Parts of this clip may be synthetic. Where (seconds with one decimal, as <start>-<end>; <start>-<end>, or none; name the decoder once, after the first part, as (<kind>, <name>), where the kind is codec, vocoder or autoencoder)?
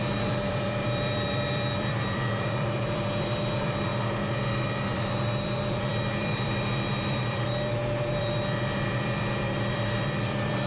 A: 0.0-3.9 (vocoder, BigVGAN v2); 4.5-10.7